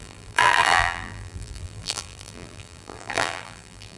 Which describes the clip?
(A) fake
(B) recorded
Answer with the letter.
A